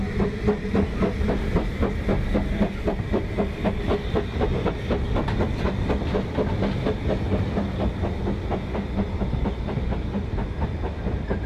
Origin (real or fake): real